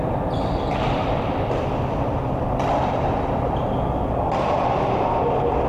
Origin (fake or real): real